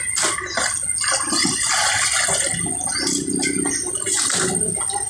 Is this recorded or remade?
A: recorded